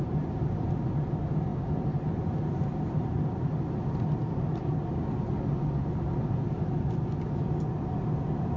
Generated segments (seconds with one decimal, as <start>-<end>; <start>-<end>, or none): none